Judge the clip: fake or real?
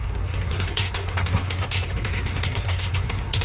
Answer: fake